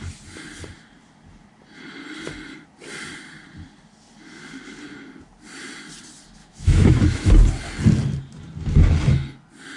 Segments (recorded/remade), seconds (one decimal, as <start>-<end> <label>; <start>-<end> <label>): 0.0-6.4 recorded; 6.4-7.3 remade; 7.3-9.8 recorded